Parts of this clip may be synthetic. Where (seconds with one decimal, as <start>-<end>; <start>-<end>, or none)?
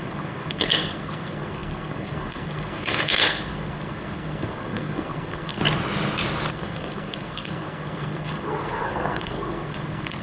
0.0-5.6; 6.5-10.2